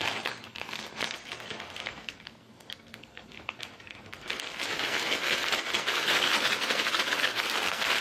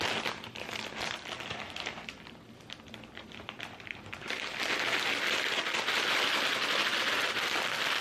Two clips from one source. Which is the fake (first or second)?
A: first